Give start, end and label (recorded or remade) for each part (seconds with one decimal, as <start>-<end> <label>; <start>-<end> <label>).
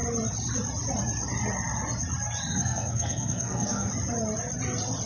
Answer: 0.0-2.5 recorded; 2.5-3.9 remade; 3.9-5.1 recorded